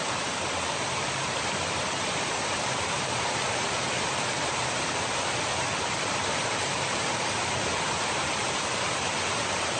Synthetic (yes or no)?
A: yes